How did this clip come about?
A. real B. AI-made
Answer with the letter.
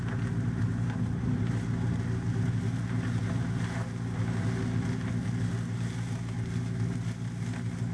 A